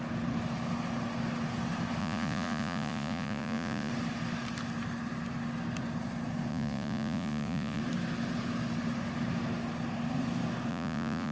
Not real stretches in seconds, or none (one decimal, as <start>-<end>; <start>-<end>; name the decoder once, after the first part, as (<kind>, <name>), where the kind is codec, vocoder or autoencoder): 2.0-3.9 (vocoder, Vocos); 6.5-7.8; 10.7-11.3